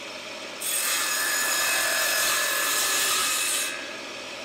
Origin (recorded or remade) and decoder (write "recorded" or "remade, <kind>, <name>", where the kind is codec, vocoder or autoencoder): remade, vocoder, BigVGAN v2